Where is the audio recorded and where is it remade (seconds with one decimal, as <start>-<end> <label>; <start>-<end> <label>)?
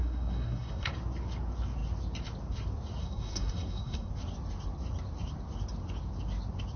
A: 0.0-0.9 remade; 0.9-3.0 recorded; 3.0-4.1 remade; 4.1-6.8 recorded